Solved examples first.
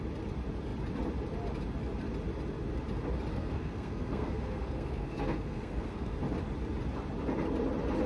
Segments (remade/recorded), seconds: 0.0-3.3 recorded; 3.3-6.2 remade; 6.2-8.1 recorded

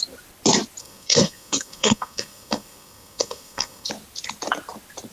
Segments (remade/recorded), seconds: 0.0-0.8 recorded; 0.8-3.9 remade; 3.9-5.1 recorded